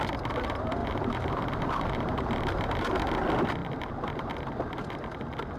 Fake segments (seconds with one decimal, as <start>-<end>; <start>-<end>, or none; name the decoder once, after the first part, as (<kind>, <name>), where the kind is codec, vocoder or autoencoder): 0.8-2.9 (vocoder, BigVGAN v2); 3.6-4.3